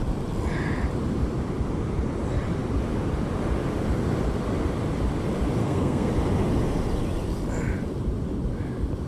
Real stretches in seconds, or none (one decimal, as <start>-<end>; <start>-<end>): 0.0-5.6; 6.1-9.1